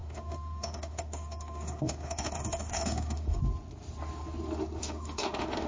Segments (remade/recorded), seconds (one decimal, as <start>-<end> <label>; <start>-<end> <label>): 0.0-3.4 remade; 3.4-4.8 recorded; 4.8-5.7 remade